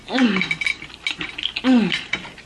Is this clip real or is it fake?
real